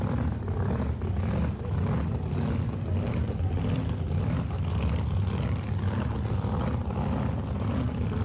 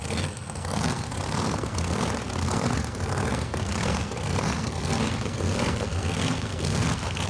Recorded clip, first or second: first